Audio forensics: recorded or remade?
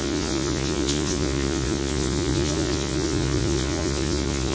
remade